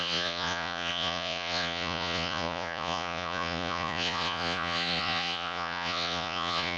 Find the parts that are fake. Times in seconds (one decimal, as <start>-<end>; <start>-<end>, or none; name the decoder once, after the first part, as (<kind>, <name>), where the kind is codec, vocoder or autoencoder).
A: 0.0-6.8 (vocoder, Vocos)